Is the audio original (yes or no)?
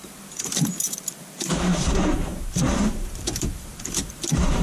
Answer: no